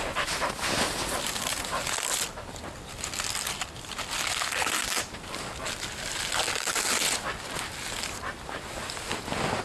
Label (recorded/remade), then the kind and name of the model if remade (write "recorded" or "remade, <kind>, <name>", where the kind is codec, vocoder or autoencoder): recorded